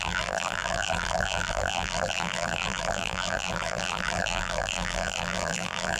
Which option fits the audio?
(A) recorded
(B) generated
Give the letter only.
B